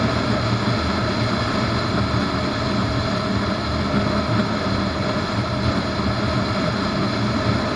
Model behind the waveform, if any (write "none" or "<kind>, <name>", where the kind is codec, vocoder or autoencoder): none